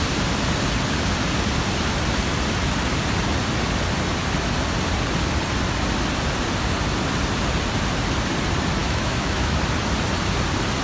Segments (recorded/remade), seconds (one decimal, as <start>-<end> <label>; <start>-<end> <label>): 0.0-8.8 recorded; 8.8-9.6 remade; 9.6-10.8 recorded